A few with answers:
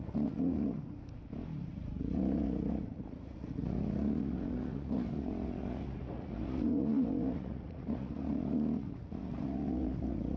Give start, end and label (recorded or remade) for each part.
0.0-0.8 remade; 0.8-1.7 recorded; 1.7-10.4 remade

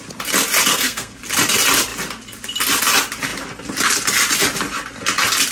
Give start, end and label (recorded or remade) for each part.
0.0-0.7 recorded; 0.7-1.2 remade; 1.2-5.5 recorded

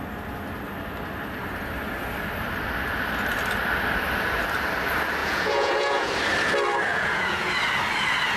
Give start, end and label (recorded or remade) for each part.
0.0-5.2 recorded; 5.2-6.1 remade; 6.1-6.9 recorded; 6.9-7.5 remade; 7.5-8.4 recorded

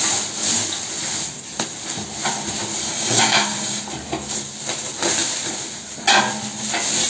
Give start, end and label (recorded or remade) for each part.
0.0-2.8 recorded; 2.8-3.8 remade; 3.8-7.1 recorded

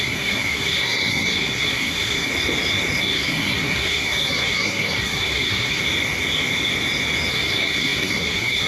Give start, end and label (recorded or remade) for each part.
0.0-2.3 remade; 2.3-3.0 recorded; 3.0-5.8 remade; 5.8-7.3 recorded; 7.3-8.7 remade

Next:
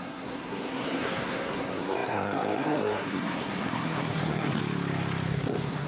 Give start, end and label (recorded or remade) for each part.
0.0-4.6 remade; 4.6-5.3 recorded; 5.3-5.9 remade